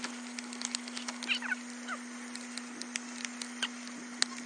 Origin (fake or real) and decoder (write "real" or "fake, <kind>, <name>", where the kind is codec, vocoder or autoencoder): real